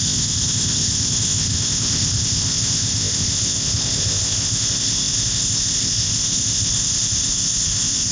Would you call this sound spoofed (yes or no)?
yes